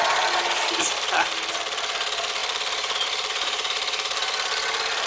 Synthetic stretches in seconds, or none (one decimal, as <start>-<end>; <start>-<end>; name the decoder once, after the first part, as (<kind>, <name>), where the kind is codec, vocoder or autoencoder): 2.4-5.1 (vocoder, BigVGAN v2)